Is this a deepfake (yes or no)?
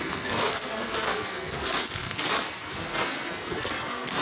yes